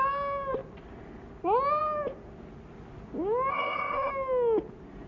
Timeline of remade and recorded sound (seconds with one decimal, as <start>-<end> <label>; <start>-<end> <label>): 0.0-3.5 recorded; 3.5-4.1 remade; 4.1-5.1 recorded